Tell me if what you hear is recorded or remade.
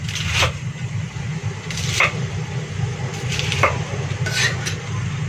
recorded